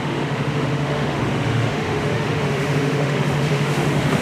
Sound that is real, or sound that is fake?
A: fake